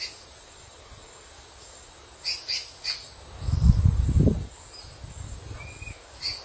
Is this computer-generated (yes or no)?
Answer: no